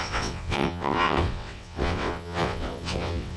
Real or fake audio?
fake